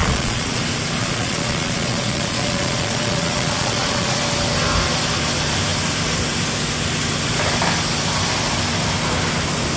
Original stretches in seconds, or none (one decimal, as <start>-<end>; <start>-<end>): 0.6-1.0; 4.2-9.8